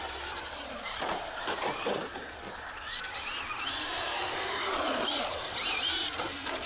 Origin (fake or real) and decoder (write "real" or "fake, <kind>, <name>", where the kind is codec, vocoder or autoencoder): fake, vocoder, BigVGAN v2